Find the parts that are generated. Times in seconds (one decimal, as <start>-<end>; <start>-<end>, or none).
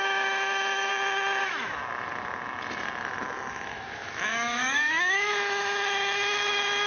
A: 0.0-0.9; 1.4-1.8; 3.5-6.9